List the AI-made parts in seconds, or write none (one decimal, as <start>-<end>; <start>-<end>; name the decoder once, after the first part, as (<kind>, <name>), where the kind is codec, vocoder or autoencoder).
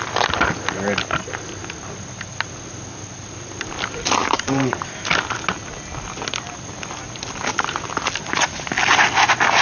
4.2-5.0 (vocoder, BigVGAN v2)